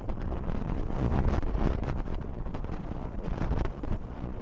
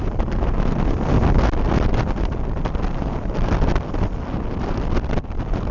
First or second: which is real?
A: second